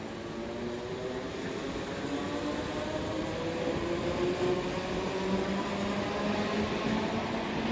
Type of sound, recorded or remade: recorded